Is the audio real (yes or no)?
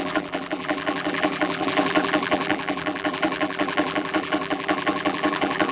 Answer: no